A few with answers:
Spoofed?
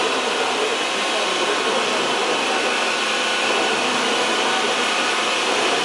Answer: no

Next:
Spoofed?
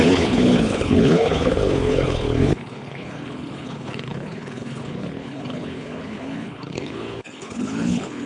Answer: yes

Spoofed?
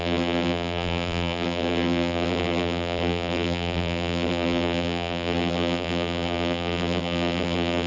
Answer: yes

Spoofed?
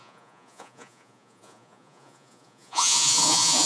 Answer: yes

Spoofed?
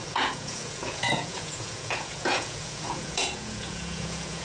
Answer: yes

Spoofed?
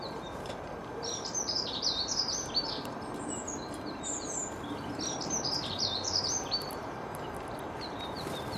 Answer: yes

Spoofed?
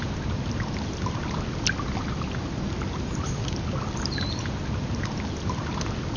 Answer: no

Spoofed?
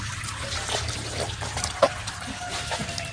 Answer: no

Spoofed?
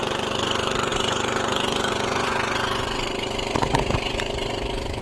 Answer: yes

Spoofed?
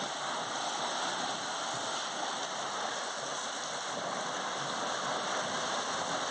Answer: yes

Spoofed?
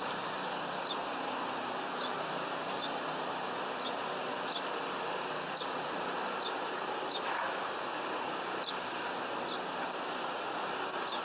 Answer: no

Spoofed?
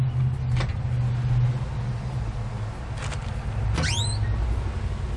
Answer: no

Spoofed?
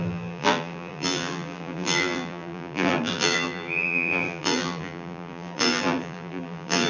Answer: yes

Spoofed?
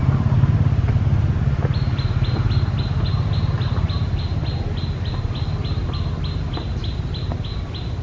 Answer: no